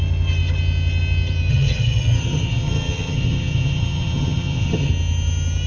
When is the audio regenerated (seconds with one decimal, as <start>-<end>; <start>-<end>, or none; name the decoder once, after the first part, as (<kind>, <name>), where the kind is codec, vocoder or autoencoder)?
1.5-4.9 (vocoder, HiFi-GAN)

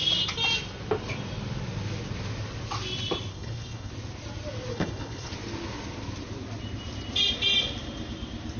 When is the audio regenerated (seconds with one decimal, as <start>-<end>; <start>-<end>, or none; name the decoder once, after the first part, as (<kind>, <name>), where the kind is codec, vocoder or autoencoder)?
3.3-3.9 (codec, HILCodec); 4.7-5.3

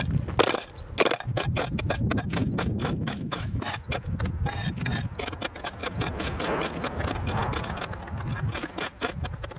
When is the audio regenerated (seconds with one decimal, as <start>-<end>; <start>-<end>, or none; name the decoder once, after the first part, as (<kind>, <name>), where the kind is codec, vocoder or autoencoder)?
2.8-3.8 (autoencoder, DAC-VAE)

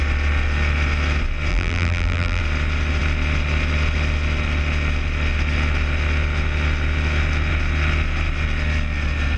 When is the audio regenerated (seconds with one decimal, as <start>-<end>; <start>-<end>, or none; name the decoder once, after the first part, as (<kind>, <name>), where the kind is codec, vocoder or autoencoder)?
1.5-2.4 (vocoder, BigVGAN v2)

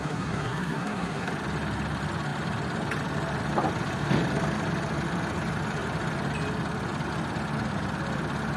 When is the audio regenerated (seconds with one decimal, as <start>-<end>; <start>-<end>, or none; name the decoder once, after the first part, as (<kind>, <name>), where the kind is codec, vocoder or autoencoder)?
0.0-1.3 (codec, SNAC)

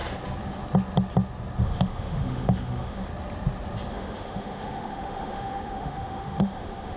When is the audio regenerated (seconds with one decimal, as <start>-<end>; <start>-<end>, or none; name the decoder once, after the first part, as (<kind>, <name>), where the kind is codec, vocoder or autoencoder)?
1.6-3.1 (autoencoder, DAC-VAE); 3.9-7.0